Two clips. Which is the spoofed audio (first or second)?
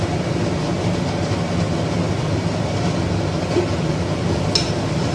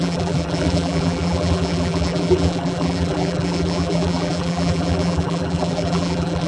second